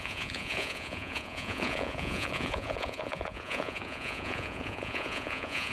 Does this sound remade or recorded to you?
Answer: remade